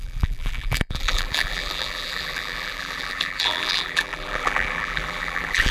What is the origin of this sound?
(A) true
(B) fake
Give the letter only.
B